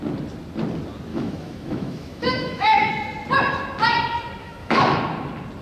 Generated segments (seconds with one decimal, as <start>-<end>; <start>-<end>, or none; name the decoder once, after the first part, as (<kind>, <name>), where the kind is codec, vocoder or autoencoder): 1.1-2.9 (autoencoder, DAC-VAE); 4.4-5.0